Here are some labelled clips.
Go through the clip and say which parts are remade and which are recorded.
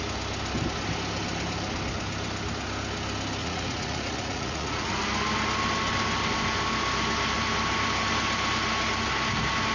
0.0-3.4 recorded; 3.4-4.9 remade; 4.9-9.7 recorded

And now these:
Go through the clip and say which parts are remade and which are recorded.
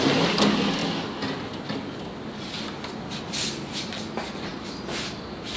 0.0-5.6 recorded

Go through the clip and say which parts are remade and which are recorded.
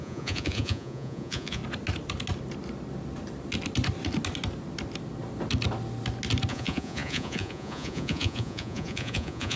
0.0-1.6 remade; 1.6-6.5 recorded; 6.5-9.6 remade